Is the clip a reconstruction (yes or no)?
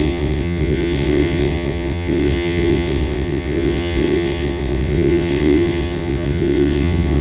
yes